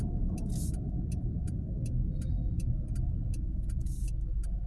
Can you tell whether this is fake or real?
real